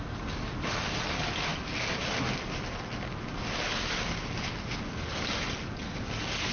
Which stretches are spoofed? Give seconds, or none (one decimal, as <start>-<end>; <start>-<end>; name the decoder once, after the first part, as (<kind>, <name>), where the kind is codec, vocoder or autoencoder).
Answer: none